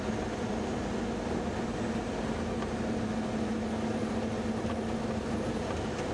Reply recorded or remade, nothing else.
recorded